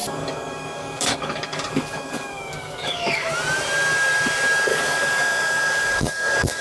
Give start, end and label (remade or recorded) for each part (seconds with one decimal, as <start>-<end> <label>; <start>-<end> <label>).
0.0-3.3 remade; 3.3-4.7 recorded; 4.7-6.6 remade